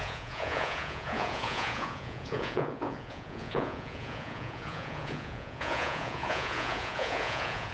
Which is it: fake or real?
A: fake